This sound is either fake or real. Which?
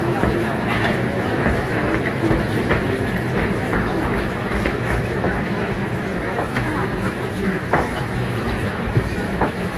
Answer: fake